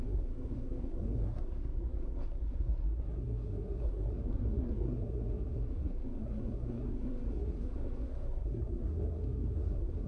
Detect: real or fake fake